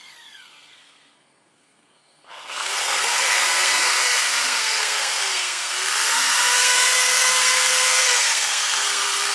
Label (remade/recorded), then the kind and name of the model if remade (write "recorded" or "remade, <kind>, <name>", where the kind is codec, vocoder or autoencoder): remade, codec, SNAC